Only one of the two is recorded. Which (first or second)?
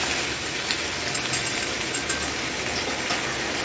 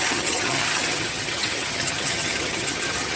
first